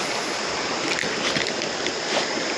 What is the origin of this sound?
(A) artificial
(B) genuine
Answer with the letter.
B